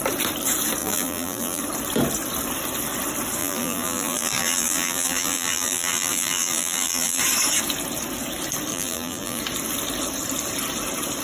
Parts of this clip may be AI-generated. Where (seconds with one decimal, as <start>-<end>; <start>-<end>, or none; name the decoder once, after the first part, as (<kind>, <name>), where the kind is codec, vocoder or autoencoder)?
0.8-1.6 (vocoder, BigVGAN v2); 3.4-7.2; 8.7-9.4